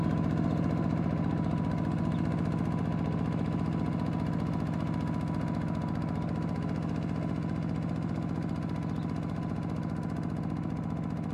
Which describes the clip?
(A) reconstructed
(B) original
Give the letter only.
B